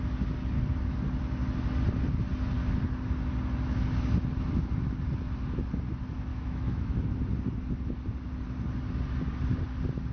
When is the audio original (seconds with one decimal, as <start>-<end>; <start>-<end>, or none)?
0.0-6.3; 7.2-10.1